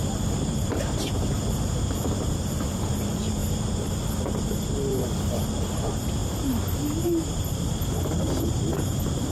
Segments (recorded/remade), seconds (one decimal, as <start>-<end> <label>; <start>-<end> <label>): 0.0-9.3 remade